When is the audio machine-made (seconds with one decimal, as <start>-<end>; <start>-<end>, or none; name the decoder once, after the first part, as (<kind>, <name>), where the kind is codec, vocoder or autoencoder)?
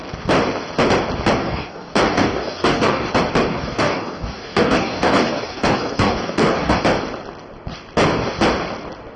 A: 1.4-3.1 (codec, DAC); 3.5-6.8